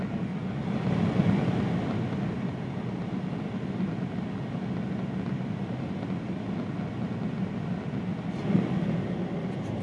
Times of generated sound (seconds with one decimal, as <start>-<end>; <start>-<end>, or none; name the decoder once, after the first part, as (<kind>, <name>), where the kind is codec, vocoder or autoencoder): none